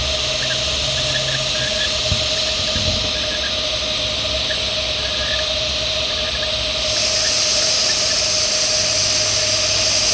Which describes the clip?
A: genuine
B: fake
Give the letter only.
A